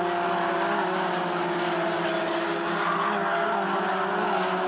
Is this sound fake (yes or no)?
no